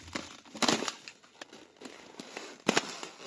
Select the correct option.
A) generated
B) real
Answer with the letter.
B